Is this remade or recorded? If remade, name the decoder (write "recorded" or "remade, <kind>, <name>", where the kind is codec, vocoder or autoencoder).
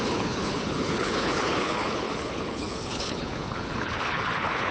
remade, codec, HILCodec